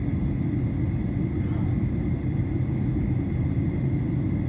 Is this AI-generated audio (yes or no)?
no